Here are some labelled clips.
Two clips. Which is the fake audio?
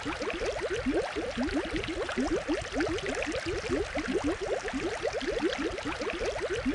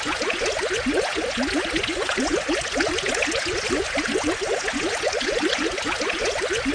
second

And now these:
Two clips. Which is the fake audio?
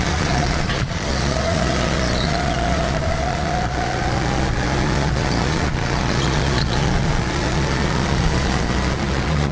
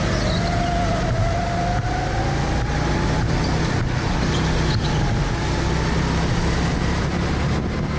first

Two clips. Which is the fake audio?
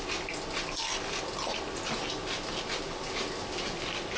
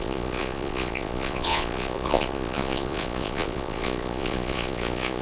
second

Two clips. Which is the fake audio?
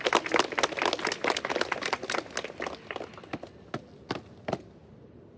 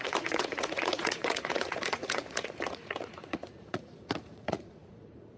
second